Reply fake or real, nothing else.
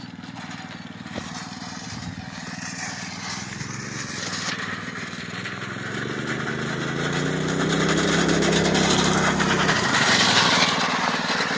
real